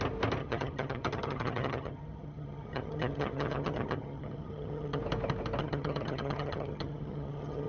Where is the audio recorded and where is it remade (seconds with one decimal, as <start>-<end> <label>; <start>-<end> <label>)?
0.0-0.4 recorded; 0.4-5.0 remade; 5.0-5.6 recorded; 5.6-7.7 remade